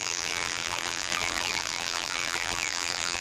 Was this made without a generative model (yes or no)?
no